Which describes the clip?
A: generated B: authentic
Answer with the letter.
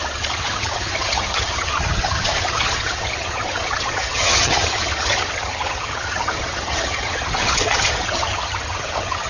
A